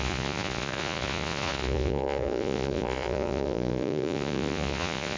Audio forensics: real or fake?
fake